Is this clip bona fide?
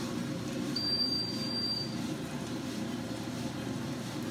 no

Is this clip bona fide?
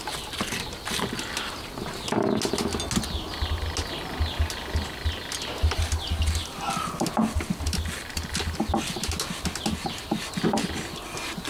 yes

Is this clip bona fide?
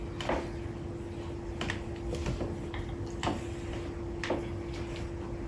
yes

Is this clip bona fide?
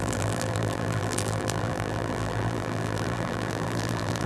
no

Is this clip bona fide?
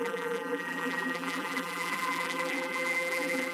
no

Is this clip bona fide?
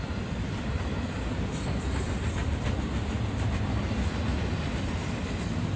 no